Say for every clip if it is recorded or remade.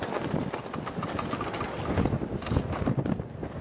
recorded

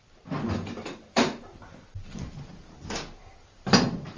recorded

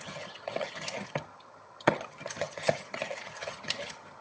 remade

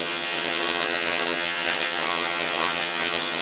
remade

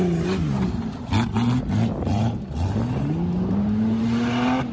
recorded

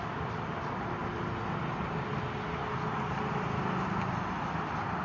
recorded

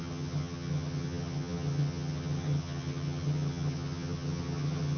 remade